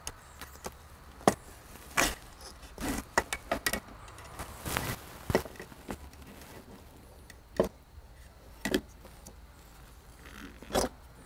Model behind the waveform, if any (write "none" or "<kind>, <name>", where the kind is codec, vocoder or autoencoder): none